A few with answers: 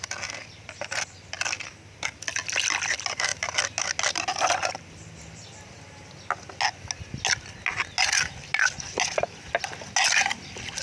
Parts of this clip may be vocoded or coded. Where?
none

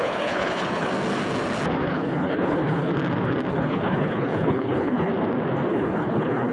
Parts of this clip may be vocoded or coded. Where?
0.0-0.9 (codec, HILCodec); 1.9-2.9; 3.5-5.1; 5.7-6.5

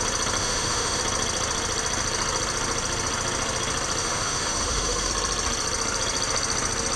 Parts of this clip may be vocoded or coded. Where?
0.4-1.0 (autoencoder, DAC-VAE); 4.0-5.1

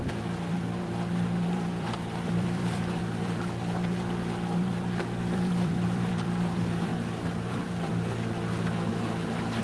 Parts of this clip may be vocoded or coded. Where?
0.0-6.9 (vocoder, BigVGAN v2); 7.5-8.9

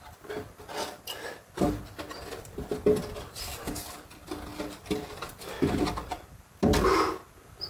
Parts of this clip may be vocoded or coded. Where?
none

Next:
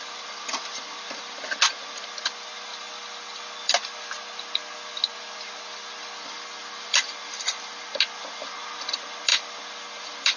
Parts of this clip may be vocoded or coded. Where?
none

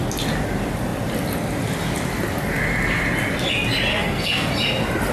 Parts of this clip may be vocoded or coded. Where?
3.9-4.5 (codec, SNAC)

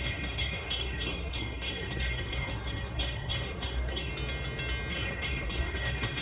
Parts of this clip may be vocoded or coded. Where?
0.0-4.1 (codec, SNAC); 4.9-6.2